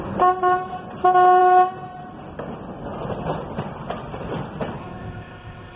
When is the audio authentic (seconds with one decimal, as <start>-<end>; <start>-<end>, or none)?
0.0-4.8